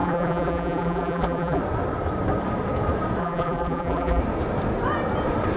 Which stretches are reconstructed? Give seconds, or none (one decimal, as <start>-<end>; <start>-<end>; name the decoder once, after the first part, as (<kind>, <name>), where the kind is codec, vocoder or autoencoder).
0.0-1.6 (vocoder, BigVGAN v2); 3.2-4.2